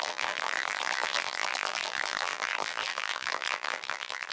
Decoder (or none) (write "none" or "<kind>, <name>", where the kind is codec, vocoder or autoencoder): vocoder, BigVGAN v2